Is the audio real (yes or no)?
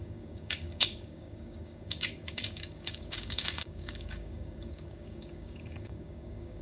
no